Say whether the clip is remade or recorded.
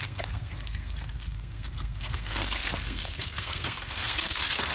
remade